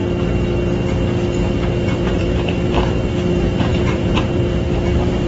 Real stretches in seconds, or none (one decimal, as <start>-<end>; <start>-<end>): 0.0-1.9